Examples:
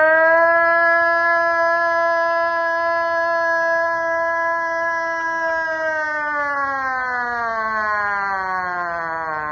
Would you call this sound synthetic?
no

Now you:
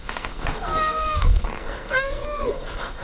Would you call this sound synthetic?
yes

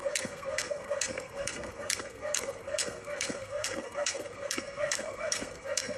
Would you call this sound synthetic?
yes